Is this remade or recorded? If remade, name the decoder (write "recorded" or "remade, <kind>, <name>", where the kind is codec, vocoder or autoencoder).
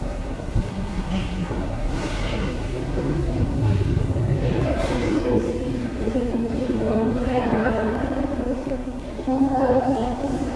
remade, codec, SNAC